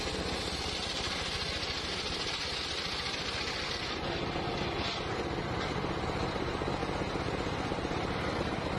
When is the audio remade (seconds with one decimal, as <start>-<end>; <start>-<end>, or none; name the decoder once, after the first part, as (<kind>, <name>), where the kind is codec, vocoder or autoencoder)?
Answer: none